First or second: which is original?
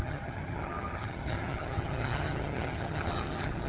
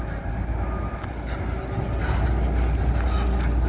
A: second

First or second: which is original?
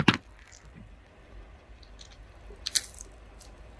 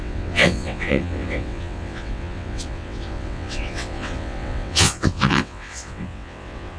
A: first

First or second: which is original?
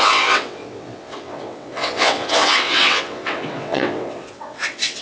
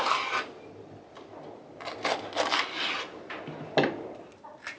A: second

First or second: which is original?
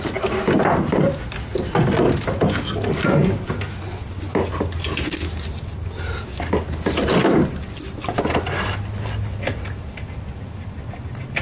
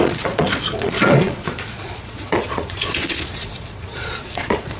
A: first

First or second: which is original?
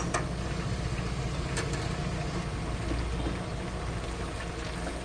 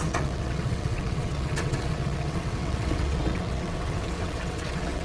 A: first